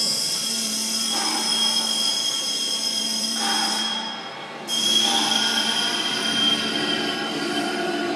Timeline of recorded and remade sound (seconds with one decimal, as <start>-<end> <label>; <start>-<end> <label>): 0.0-1.5 remade; 1.5-2.1 recorded; 2.1-8.2 remade